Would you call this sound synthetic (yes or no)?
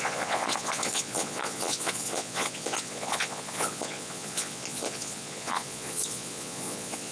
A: yes